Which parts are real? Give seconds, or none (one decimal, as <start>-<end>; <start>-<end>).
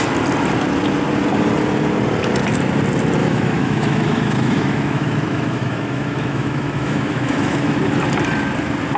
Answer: 0.0-3.2; 7.8-9.0